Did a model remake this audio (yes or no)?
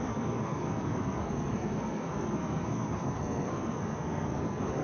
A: yes